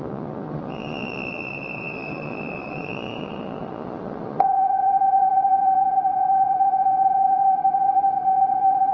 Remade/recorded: remade